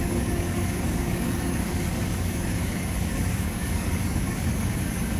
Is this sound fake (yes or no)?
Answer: yes